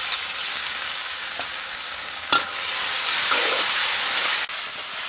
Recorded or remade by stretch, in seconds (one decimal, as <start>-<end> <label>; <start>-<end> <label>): 0.0-0.5 recorded; 0.5-2.3 remade; 2.3-5.1 recorded